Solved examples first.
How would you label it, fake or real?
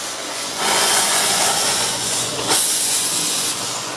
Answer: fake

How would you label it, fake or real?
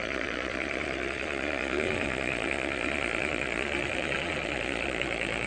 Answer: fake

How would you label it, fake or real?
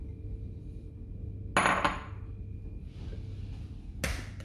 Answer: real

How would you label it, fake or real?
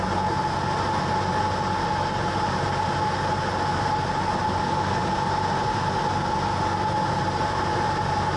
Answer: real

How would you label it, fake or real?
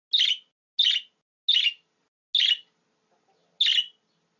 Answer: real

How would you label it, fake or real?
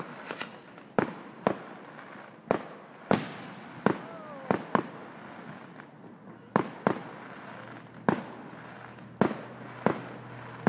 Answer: real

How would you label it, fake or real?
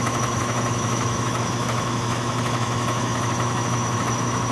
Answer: fake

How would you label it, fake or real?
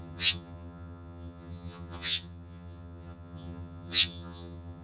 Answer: fake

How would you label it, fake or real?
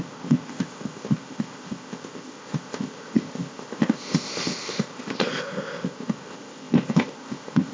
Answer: fake